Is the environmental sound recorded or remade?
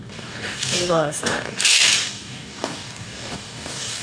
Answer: remade